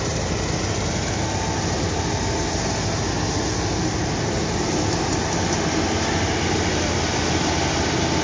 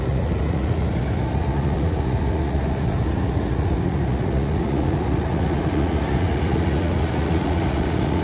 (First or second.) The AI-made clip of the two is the second